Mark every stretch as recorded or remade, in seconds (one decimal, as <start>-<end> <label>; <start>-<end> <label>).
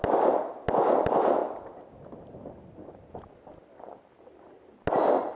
0.0-5.4 recorded